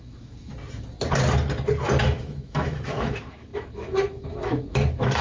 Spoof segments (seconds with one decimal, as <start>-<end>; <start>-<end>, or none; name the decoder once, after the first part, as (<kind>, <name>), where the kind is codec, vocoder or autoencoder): 0.0-0.5 (autoencoder, DAC-VAE); 2.0-5.2